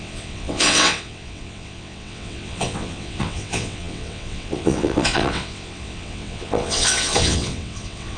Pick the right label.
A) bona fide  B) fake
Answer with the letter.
B